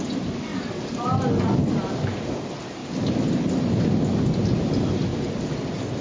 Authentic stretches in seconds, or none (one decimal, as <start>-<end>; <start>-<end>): 0.0-0.5; 1.2-6.0